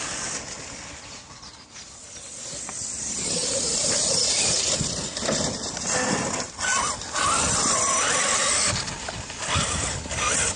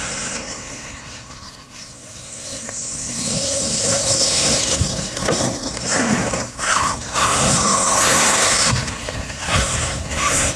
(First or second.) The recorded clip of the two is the first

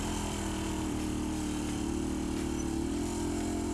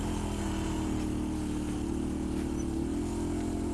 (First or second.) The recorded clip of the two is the second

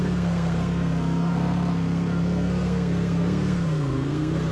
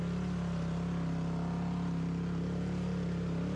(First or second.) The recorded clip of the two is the second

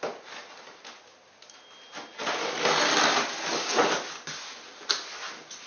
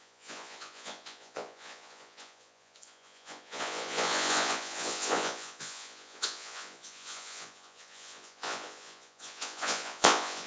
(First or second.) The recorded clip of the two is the first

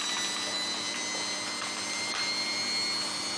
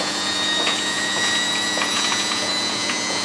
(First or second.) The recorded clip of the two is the first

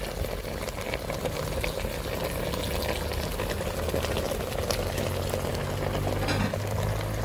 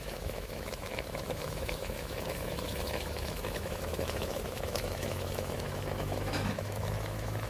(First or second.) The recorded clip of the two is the first